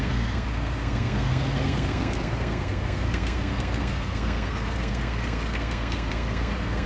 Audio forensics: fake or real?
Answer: fake